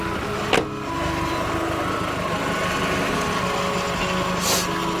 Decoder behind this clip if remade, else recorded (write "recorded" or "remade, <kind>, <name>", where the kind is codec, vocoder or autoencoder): recorded